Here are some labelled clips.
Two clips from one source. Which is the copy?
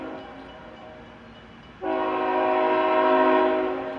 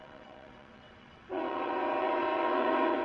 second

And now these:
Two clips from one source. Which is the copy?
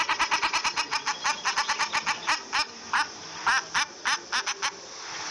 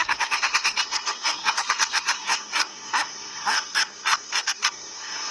second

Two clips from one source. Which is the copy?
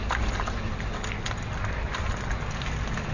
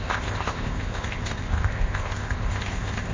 second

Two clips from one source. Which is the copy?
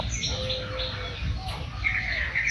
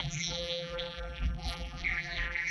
second